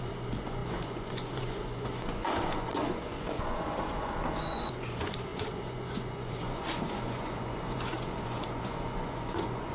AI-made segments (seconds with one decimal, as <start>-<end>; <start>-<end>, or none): 0.0-9.7